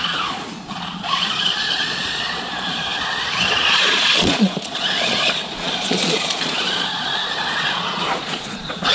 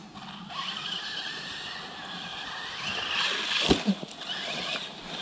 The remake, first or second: first